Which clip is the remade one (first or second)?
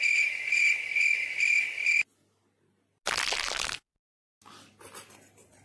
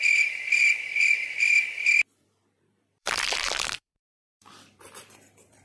second